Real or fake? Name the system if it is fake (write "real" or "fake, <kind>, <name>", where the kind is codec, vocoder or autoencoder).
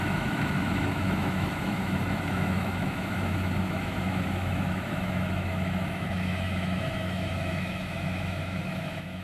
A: fake, autoencoder, DAC-VAE